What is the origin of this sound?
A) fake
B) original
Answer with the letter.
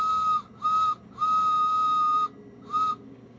B